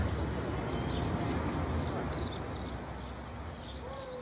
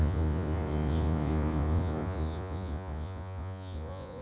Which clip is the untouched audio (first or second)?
first